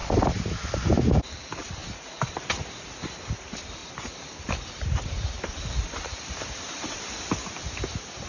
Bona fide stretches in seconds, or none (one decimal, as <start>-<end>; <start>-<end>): 1.0-3.8; 7.0-8.3